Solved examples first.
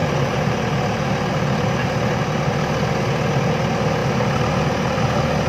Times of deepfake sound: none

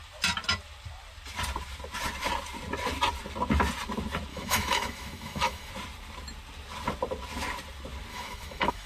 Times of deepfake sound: 4.3-5.7 (autoencoder, DAC-VAE); 8.1-8.9

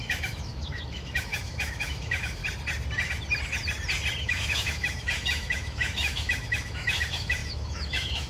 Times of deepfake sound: 0.0-2.4 (autoencoder, DAC-VAE); 4.2-8.3

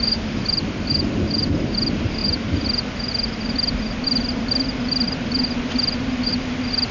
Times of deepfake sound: none